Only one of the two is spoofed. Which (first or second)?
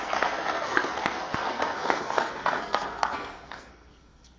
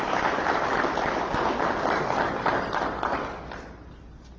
first